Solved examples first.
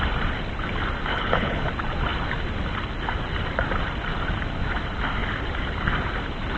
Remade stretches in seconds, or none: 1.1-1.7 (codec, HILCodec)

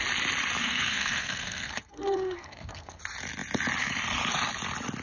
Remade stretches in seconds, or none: 0.6-3.0 (codec, SNAC)

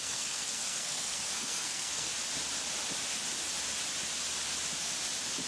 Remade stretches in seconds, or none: 0.0-2.1 (codec, SNAC)

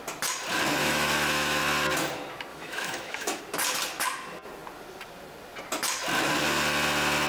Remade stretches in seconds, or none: 0.8-1.6 (autoencoder, DAC-VAE); 2.5-3.4

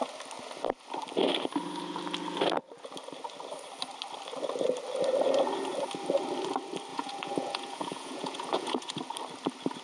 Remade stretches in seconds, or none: 6.9-9.0 (vocoder, Vocos)

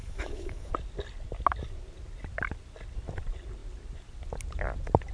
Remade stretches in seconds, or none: 0.0-0.7 (autoencoder, DAC-VAE)

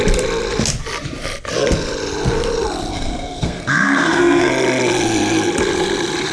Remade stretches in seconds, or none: 2.9-4.5 (codec, SNAC)